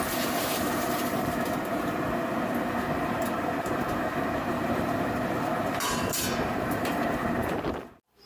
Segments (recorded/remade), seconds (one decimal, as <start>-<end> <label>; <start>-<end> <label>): 0.0-7.4 remade; 7.4-8.3 recorded